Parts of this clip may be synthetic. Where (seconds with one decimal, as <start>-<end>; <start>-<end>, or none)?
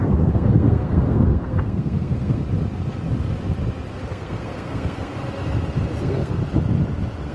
0.0-2.4; 4.1-5.1; 6.0-6.4